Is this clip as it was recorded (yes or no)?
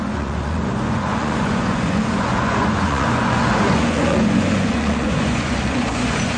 no